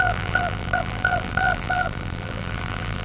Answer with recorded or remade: remade